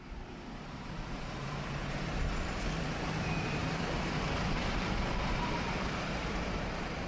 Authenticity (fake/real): fake